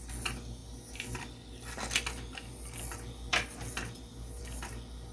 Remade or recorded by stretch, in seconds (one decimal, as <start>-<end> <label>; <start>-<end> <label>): 0.0-5.1 recorded